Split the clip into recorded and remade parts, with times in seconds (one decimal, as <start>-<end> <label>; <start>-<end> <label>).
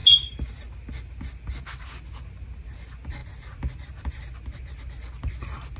0.0-5.8 recorded